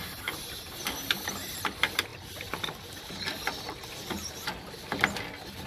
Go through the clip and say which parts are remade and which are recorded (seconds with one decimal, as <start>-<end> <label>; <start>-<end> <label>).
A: 0.0-5.7 recorded